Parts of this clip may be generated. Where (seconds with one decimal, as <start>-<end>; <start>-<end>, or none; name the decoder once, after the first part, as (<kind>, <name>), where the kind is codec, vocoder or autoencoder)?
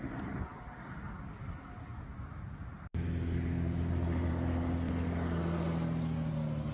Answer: none